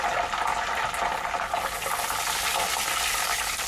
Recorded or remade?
recorded